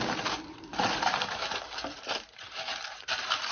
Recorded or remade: remade